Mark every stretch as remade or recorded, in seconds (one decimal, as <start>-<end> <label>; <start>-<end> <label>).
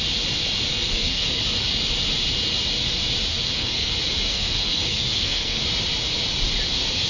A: 0.0-0.7 recorded; 0.7-1.4 remade; 1.4-3.3 recorded; 3.3-3.9 remade; 3.9-4.3 recorded; 4.3-5.6 remade; 5.6-7.1 recorded